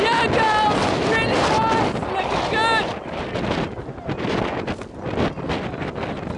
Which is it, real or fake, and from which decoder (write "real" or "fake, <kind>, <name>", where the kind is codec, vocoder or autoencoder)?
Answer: real